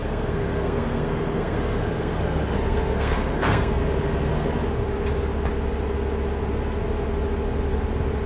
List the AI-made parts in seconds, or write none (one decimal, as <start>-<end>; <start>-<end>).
0.0-3.8